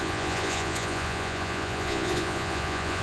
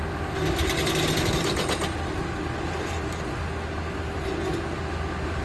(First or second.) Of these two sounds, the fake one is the first